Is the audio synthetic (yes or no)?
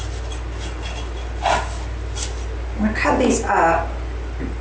no